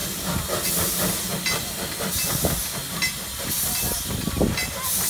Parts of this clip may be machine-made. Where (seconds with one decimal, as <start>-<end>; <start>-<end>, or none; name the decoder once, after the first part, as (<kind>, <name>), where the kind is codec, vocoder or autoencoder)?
none